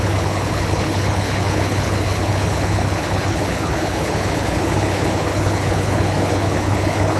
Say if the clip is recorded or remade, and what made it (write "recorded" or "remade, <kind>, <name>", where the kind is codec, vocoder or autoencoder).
remade, codec, HILCodec